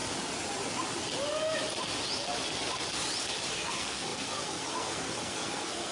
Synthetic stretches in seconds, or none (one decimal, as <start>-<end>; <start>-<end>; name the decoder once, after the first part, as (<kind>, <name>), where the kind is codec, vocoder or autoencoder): 3.5-5.9 (codec, SNAC)